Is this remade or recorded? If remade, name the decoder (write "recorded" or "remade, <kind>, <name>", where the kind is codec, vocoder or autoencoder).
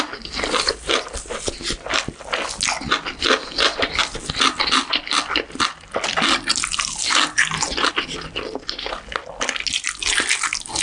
recorded